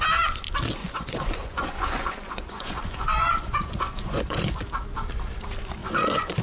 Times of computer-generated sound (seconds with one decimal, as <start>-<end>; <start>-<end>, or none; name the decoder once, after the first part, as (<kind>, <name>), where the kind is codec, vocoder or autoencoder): 0.8-4.6 (vocoder, Vocos); 5.8-6.4